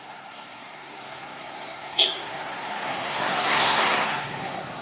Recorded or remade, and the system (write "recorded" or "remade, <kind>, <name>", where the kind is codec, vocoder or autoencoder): remade, codec, SNAC